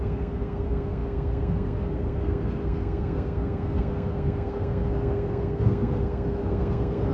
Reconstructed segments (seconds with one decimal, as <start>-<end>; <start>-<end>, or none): 0.0-7.1